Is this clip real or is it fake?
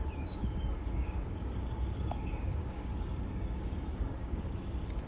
fake